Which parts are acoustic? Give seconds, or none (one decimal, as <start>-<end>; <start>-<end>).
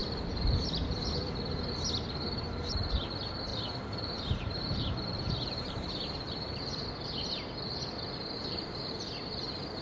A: 1.6-3.5; 6.9-8.4; 8.9-9.8